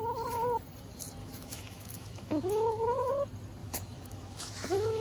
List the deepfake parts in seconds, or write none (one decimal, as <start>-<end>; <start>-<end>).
1.2-3.1; 3.6-5.0